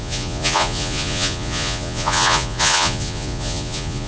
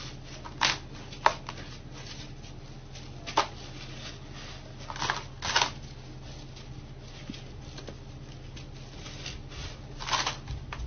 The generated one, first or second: first